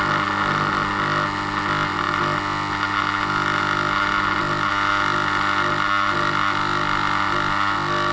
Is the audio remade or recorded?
recorded